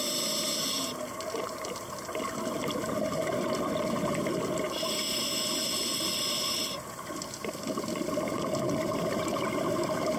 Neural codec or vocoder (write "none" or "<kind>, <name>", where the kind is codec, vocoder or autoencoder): none